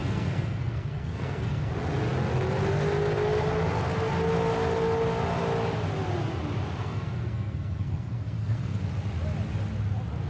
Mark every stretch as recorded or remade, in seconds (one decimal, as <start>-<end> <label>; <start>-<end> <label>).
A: 0.0-1.7 remade; 1.7-6.8 recorded; 6.8-8.8 remade; 8.8-10.3 recorded